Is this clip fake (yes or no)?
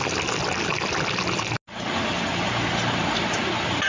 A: no